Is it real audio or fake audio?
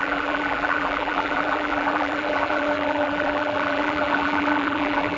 fake